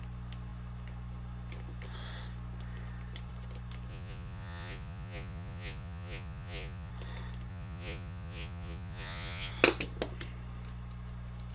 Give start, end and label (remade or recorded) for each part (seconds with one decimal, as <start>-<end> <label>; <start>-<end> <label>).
0.0-3.9 recorded; 3.9-6.9 remade; 6.9-7.5 recorded; 7.5-9.5 remade; 9.5-11.5 recorded